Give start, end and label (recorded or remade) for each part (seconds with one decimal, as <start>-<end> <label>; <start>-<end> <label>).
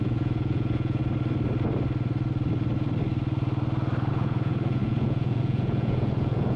0.0-1.0 remade; 1.0-4.1 recorded; 4.1-6.6 remade